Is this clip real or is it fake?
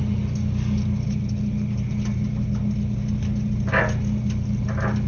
real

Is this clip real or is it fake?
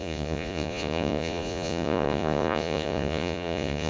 fake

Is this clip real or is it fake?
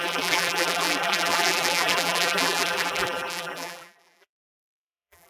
fake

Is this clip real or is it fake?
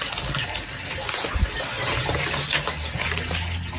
real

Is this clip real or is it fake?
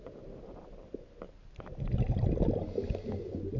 real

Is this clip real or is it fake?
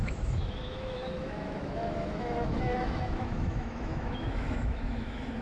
fake